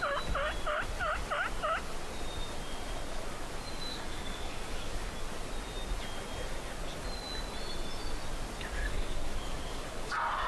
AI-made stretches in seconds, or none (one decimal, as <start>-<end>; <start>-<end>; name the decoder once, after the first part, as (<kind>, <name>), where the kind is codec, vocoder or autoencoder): 3.9-5.1 (codec, DAC); 8.8-10.1